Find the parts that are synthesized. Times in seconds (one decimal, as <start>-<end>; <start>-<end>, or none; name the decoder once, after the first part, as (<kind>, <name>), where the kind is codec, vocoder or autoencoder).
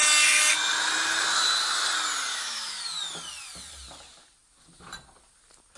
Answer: 2.3-2.8 (autoencoder, DAC-VAE)